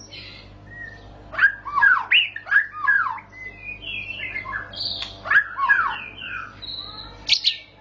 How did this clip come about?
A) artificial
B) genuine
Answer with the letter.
B